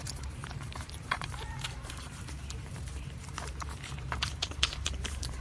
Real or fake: fake